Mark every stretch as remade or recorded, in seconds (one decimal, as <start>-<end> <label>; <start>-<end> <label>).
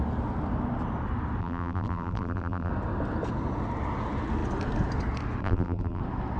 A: 0.0-1.4 recorded; 1.4-2.7 remade; 2.7-5.4 recorded; 5.4-6.0 remade; 6.0-6.4 recorded